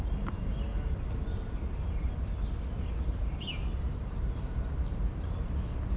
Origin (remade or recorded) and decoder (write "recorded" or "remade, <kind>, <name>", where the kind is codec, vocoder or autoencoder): recorded